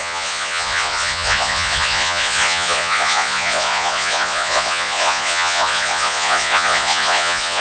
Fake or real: fake